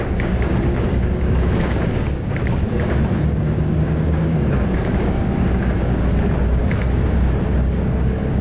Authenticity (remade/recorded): remade